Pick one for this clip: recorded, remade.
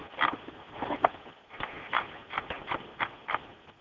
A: recorded